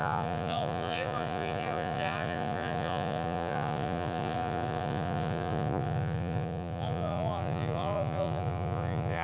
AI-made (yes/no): yes